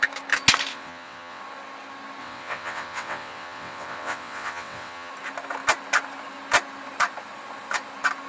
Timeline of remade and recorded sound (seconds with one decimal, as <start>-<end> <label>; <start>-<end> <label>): 0.0-0.7 recorded; 0.7-1.4 remade; 1.4-2.2 recorded; 2.2-5.1 remade; 5.1-8.3 recorded